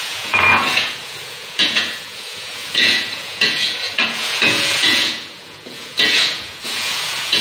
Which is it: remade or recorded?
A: remade